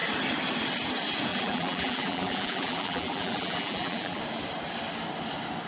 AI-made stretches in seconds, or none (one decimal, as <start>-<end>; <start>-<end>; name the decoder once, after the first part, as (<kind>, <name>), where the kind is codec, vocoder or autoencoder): 1.3-4.2 (vocoder, BigVGAN v2)